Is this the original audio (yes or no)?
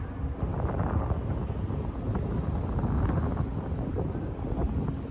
yes